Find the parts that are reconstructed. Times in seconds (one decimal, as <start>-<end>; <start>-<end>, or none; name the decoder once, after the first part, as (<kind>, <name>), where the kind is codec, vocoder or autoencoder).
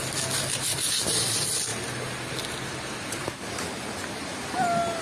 none